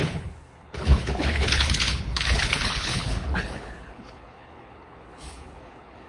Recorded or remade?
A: remade